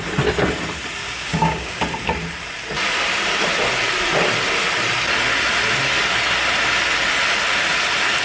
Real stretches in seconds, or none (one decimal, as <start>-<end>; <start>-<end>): 0.0-1.0; 1.8-8.2